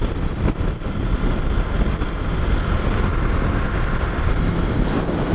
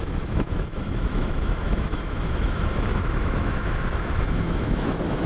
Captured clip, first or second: first